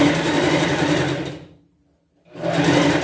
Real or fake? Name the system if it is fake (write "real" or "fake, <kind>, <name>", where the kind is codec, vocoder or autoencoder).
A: real